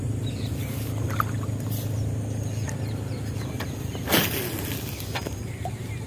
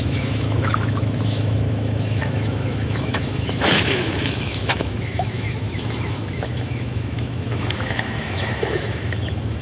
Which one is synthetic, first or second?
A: second